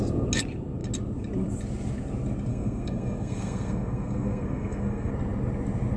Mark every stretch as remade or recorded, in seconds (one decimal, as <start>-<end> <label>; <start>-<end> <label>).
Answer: 0.0-2.5 recorded; 2.5-5.1 remade; 5.1-6.0 recorded